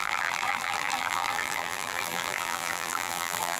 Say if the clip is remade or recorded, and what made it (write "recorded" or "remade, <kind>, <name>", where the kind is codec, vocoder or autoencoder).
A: remade, vocoder, BigVGAN v2